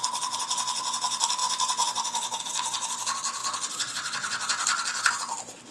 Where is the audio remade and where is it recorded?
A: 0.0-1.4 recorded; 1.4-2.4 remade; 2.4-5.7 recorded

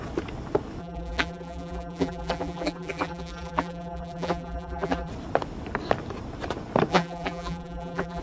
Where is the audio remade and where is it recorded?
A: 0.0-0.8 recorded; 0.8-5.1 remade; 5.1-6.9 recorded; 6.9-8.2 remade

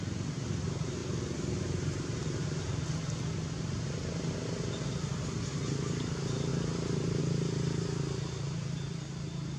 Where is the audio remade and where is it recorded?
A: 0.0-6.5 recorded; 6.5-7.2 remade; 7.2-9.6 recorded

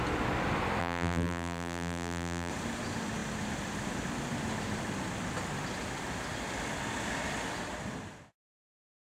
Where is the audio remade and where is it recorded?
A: 0.0-0.8 recorded; 0.8-2.5 remade; 2.5-9.0 recorded

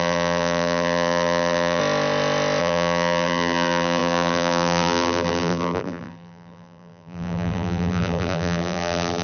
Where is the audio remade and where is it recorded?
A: 0.0-1.8 remade; 1.8-2.6 recorded; 2.6-9.2 remade

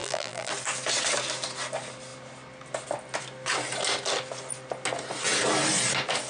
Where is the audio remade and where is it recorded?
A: 0.0-0.5 remade; 0.5-6.3 recorded

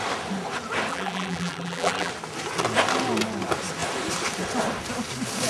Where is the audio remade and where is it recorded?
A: 0.0-0.9 recorded; 0.9-2.1 remade; 2.1-5.5 recorded

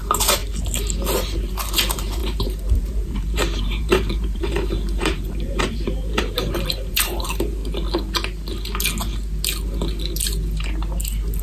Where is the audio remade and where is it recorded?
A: 0.0-0.4 remade; 0.4-1.2 recorded; 1.2-7.6 remade; 7.6-11.4 recorded